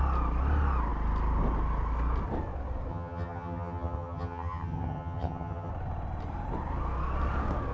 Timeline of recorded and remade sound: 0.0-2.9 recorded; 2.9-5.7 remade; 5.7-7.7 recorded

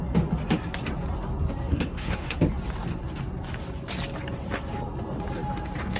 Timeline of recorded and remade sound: 0.0-1.7 recorded; 1.7-2.4 remade; 2.4-6.0 recorded

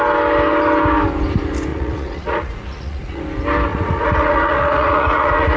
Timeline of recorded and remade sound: 0.0-1.7 recorded; 1.7-3.2 remade; 3.2-3.7 recorded; 3.7-5.6 remade

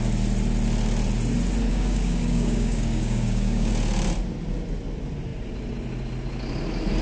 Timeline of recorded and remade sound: 0.0-1.7 recorded; 1.7-3.7 remade; 3.7-7.0 recorded

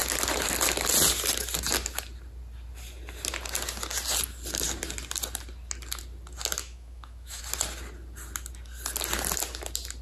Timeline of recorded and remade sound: 0.0-6.6 recorded; 6.6-7.4 remade; 7.4-10.0 recorded

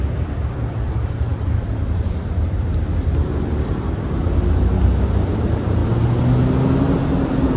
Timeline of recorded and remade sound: 0.0-5.8 remade; 5.8-7.6 recorded

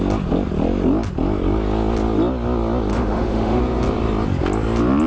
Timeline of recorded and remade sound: 0.0-2.9 recorded; 2.9-3.6 remade; 3.6-5.1 recorded

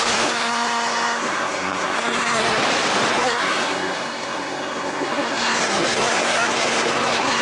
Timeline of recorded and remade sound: 0.0-2.6 remade; 2.6-3.1 recorded; 3.1-7.4 remade